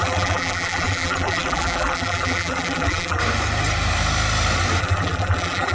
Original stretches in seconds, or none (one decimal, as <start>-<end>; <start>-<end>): 3.2-4.8